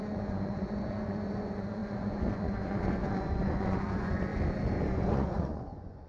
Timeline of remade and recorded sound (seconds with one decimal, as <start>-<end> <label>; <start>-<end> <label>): 0.0-4.3 remade; 4.3-4.9 recorded; 4.9-6.1 remade